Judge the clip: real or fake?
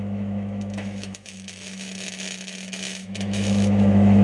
fake